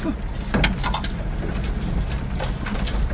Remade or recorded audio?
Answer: recorded